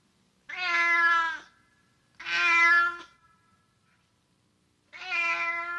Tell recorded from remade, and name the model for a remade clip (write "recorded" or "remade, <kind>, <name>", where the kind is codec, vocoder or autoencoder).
recorded